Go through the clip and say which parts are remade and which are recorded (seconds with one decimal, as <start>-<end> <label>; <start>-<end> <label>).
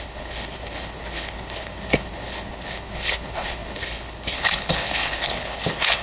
0.0-6.0 remade